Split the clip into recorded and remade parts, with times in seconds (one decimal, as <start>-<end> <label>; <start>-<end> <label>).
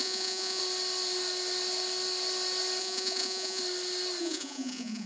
0.0-0.6 remade; 0.6-2.8 recorded; 2.8-3.6 remade; 3.6-4.2 recorded; 4.2-5.1 remade